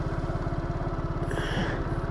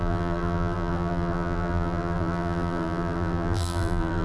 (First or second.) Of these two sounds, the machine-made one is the second